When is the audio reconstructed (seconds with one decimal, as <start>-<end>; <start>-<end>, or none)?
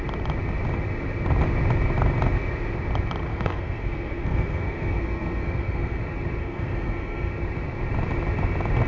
3.3-6.0; 6.4-7.3